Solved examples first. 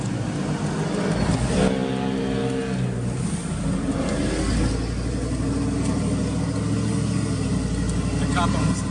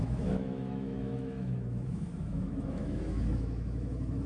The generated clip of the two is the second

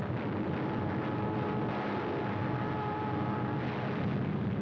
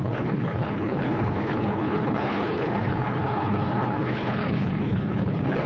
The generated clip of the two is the second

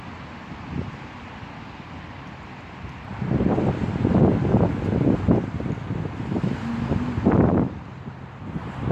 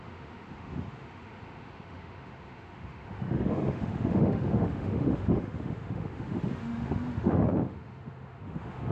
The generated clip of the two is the second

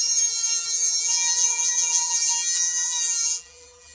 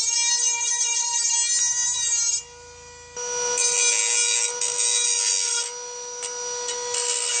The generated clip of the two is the first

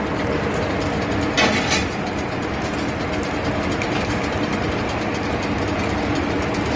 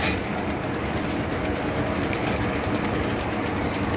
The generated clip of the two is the second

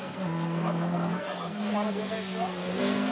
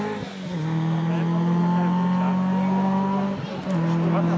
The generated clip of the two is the first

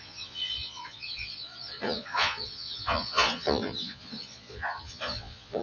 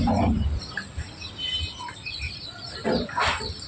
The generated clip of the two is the first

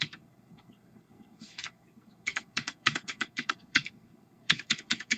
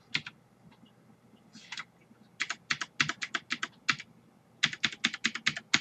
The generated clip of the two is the first